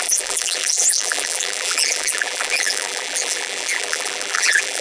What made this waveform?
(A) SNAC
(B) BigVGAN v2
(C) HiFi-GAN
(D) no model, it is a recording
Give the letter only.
B